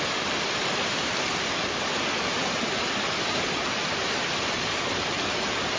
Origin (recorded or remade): remade